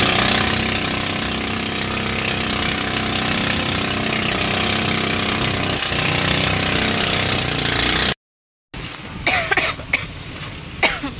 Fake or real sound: real